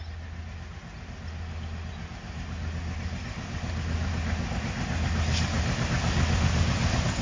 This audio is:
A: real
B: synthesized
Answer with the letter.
A